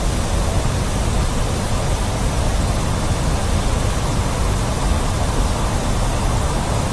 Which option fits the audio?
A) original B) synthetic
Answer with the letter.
A